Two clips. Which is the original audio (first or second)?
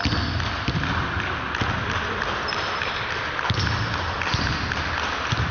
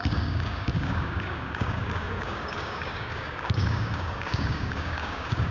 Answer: first